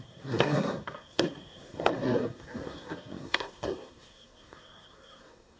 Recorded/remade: remade